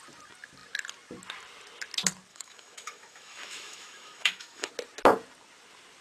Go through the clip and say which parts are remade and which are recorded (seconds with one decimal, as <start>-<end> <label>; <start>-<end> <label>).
0.0-2.3 recorded; 2.3-4.7 remade; 4.7-6.0 recorded